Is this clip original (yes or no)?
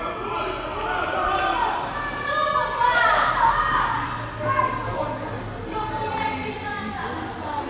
yes